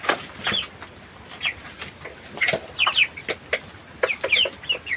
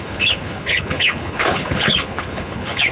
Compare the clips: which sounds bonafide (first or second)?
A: first